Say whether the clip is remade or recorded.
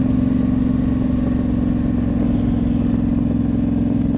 recorded